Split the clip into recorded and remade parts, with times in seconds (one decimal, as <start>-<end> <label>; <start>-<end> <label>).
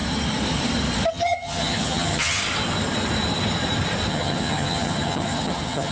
0.0-1.1 recorded; 1.1-2.4 remade; 2.4-4.1 recorded; 4.1-5.9 remade